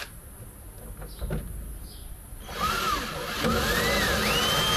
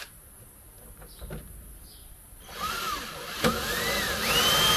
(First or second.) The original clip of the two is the first